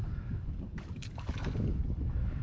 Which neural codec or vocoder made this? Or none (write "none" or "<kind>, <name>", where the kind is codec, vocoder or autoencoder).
codec, DAC